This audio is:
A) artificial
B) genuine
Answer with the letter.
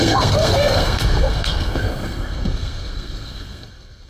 A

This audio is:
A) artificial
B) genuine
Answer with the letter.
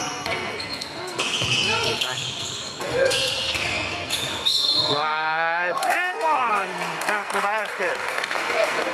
A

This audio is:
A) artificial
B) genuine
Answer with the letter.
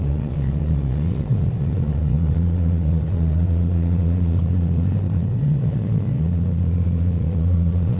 A